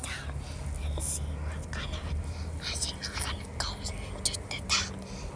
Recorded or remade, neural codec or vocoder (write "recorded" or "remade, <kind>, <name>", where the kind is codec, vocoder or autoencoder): recorded